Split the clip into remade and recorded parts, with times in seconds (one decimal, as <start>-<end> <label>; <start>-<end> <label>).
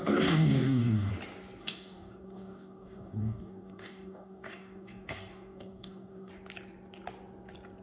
0.0-1.1 remade; 1.1-1.6 recorded; 1.6-6.3 remade; 6.3-7.8 recorded